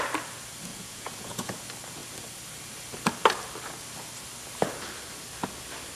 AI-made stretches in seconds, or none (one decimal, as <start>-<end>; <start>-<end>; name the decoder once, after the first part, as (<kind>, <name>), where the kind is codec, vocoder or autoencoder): 0.7-1.6 (vocoder, Vocos)